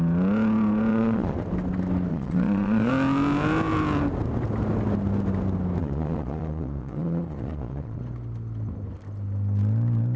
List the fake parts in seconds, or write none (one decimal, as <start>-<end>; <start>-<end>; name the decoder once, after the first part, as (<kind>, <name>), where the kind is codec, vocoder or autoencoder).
0.9-1.4 (vocoder, Vocos); 2.1-2.9; 5.8-8.0